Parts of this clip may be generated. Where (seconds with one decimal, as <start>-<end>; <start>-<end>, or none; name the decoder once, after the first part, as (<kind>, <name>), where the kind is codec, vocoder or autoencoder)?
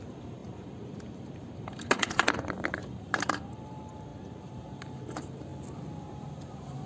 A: 0.0-5.5 (vocoder, BigVGAN v2); 6.1-6.9